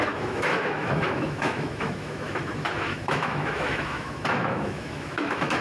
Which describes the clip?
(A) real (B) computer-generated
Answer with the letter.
B